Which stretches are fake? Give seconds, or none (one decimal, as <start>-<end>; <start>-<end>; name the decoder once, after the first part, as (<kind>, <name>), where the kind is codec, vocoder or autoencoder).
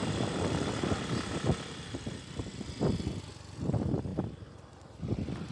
none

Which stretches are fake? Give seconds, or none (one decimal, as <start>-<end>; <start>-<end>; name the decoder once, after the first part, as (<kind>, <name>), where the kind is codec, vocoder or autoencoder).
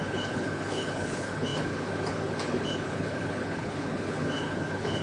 0.0-5.0 (codec, HILCodec)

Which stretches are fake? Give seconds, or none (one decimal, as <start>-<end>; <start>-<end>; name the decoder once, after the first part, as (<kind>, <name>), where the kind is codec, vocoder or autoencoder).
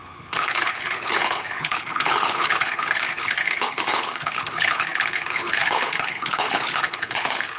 0.0-7.6 (codec, HILCodec)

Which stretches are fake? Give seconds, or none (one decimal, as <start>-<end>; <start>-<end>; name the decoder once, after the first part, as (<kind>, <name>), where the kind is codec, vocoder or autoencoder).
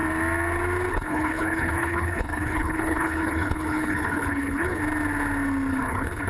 0.9-4.8 (codec, HILCodec); 5.7-6.3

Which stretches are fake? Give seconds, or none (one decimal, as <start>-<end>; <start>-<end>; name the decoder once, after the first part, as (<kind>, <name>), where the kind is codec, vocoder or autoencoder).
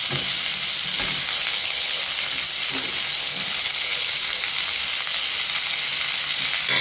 1.3-2.0 (codec, HILCodec); 3.2-4.1